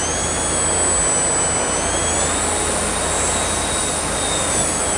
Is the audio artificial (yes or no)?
no